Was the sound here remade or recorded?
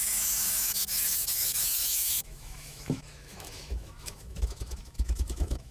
remade